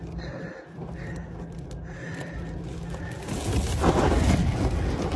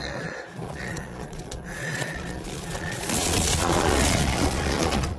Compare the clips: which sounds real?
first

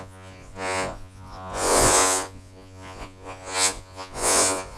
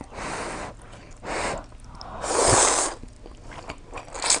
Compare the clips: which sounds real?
second